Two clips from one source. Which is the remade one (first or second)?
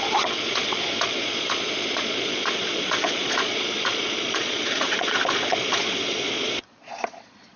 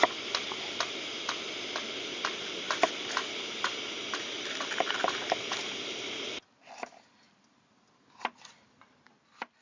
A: first